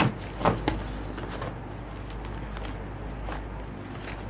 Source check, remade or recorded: recorded